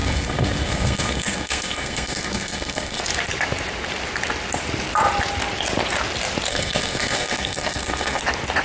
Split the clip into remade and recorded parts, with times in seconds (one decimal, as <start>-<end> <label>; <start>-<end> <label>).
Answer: 0.0-3.0 remade; 3.0-6.5 recorded; 6.5-8.2 remade; 8.2-8.6 recorded